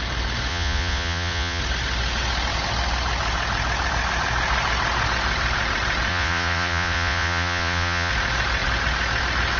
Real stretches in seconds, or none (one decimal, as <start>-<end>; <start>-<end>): 0.0-0.5; 1.6-6.1; 8.1-9.6